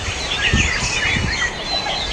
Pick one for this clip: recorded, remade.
recorded